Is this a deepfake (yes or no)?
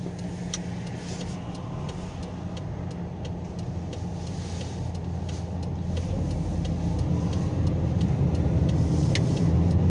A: no